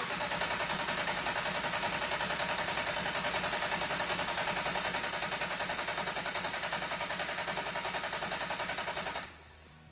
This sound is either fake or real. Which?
real